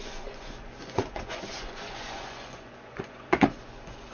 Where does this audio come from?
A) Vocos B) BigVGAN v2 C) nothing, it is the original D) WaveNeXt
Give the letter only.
A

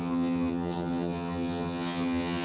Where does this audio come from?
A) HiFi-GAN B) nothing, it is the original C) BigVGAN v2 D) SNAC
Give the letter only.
A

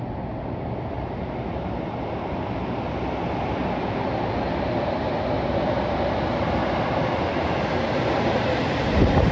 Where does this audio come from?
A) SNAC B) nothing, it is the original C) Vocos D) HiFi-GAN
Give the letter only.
B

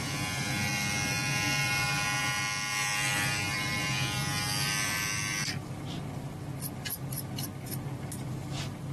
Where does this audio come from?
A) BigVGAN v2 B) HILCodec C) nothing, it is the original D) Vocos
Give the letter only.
C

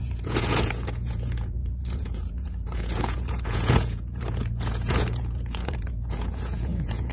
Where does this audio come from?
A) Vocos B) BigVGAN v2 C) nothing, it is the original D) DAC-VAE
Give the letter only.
A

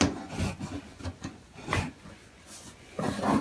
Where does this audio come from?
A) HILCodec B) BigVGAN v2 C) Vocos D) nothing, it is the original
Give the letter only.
C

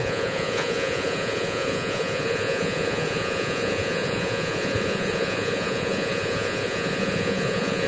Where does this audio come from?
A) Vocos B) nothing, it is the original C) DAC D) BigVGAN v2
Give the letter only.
A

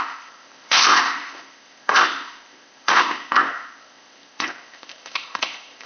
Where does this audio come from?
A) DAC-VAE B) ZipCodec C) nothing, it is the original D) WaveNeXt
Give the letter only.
B